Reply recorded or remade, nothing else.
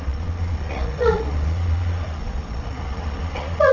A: remade